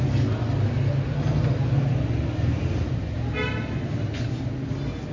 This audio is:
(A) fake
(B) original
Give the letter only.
B